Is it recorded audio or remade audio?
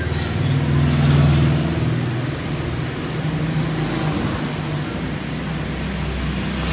recorded